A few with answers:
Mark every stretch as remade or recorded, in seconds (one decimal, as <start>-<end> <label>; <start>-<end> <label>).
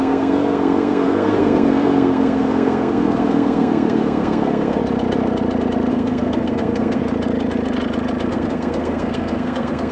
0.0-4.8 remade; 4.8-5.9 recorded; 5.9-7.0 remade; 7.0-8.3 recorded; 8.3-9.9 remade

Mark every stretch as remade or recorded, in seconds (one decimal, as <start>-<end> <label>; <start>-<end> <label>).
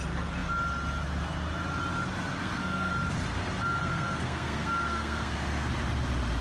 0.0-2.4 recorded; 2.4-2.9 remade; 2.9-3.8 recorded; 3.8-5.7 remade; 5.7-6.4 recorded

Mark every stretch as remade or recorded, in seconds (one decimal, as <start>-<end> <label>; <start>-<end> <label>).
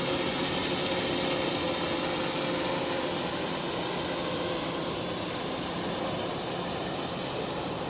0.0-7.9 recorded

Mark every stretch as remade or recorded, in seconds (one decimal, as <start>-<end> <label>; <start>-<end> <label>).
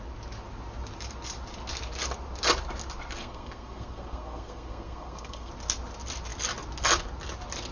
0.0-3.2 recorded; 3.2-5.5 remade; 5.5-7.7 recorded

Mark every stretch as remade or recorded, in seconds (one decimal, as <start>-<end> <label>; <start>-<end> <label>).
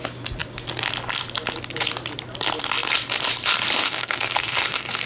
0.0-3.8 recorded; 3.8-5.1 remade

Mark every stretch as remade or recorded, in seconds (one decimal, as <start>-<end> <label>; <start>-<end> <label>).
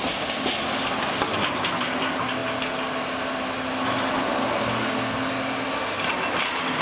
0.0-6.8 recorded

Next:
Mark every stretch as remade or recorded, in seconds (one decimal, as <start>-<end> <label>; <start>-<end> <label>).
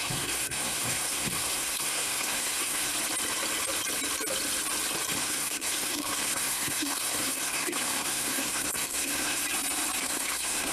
0.0-2.9 remade; 2.9-5.2 recorded; 5.2-9.4 remade; 9.4-10.0 recorded; 10.0-10.7 remade